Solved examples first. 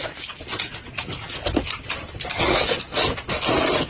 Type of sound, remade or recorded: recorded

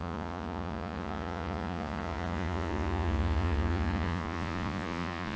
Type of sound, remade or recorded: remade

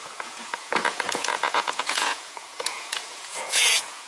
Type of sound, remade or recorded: remade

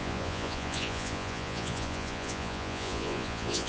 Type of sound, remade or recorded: remade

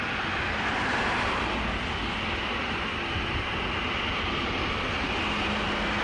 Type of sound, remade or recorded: recorded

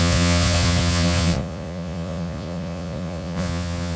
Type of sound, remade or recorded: remade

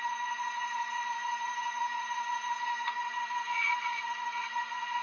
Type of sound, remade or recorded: remade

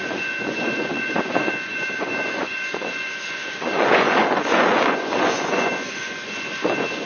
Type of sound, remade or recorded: remade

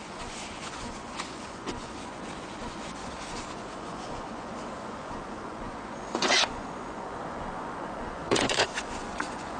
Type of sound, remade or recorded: remade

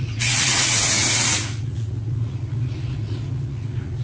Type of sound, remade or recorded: remade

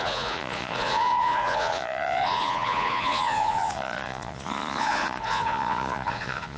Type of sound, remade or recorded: remade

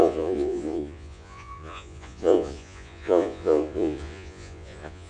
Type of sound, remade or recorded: remade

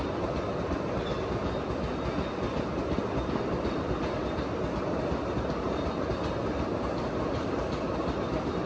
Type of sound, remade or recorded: recorded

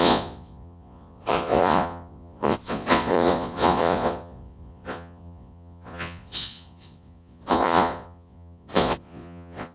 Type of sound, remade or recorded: remade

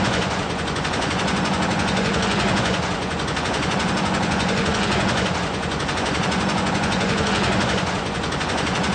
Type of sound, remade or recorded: remade